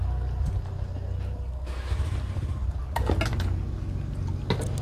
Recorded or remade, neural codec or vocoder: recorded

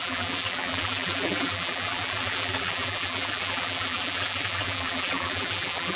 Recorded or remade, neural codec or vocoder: remade, vocoder, BigVGAN v2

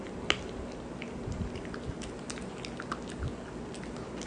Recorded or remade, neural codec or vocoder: recorded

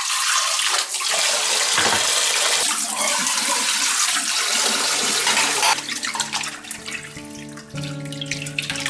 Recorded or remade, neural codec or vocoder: recorded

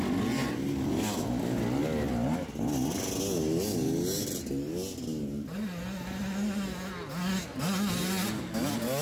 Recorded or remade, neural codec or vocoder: recorded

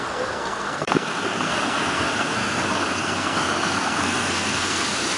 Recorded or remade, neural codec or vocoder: remade, codec, SNAC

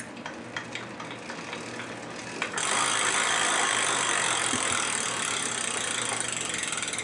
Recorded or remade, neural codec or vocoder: recorded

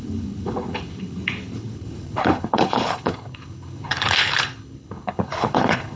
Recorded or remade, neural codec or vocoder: remade, codec, HILCodec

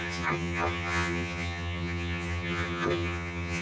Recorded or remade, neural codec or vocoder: remade, vocoder, HiFi-GAN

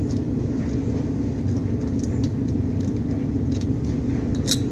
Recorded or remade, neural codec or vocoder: recorded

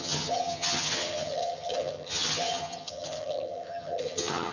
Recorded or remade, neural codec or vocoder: remade, vocoder, HiFi-GAN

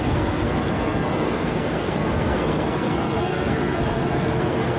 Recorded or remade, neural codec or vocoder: remade, codec, SNAC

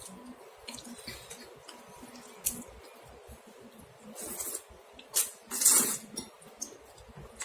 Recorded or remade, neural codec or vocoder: recorded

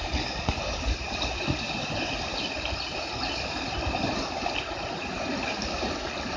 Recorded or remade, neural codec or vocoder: recorded